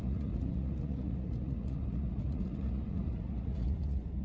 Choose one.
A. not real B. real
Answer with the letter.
A